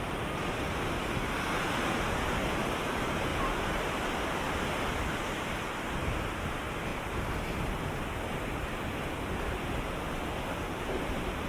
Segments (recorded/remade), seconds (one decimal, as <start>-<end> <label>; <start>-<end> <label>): 0.0-11.5 recorded